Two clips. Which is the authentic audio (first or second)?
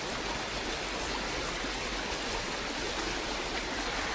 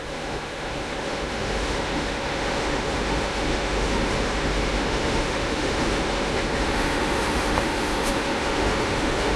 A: first